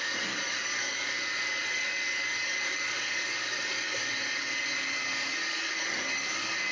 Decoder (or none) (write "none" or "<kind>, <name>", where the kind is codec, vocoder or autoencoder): codec, DAC